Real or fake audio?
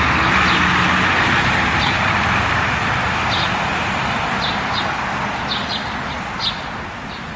real